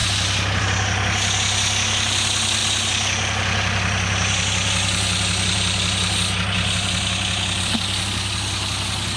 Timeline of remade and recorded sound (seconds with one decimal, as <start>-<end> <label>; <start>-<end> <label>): 0.0-9.2 recorded